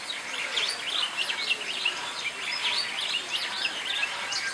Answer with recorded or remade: recorded